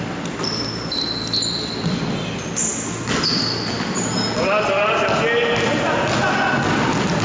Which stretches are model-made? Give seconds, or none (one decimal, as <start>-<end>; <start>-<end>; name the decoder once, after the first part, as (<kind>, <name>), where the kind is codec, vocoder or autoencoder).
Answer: none